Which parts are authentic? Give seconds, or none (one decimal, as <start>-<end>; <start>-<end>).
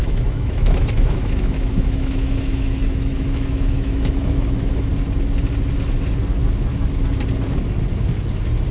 4.9-8.7